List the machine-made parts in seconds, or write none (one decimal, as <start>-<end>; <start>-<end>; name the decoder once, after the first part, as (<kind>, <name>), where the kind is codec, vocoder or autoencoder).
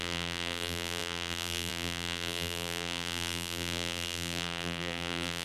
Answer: 0.0-5.4 (vocoder, BigVGAN v2)